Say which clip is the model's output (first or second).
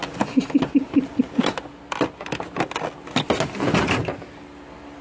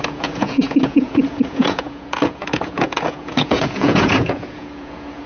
second